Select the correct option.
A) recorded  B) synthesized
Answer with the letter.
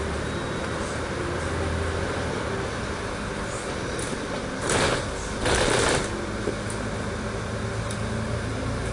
A